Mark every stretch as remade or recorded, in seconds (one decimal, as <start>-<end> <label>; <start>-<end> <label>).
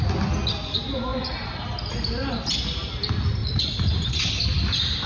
0.0-3.4 recorded; 3.4-4.4 remade; 4.4-5.1 recorded